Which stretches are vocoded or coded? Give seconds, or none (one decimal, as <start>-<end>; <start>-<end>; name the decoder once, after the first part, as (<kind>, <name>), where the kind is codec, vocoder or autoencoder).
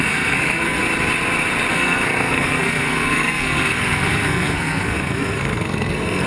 0.0-0.8 (codec, SNAC); 1.7-6.3